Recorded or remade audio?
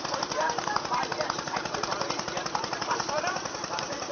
remade